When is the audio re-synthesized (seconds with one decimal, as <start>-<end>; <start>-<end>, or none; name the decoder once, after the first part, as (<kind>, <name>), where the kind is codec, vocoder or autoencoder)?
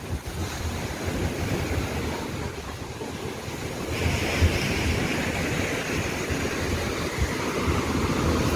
none